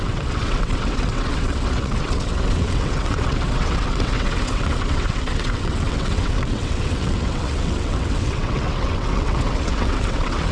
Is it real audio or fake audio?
fake